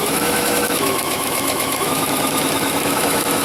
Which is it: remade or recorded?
remade